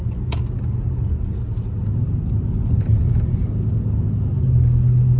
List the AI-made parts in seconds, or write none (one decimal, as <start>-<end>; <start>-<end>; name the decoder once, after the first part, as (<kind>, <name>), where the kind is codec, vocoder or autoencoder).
none